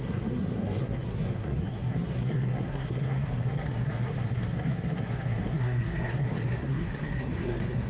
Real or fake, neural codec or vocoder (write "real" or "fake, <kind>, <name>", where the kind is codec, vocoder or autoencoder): fake, codec, SNAC